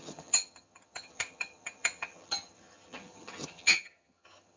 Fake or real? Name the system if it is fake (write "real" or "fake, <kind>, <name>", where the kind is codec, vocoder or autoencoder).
fake, vocoder, HiFi-GAN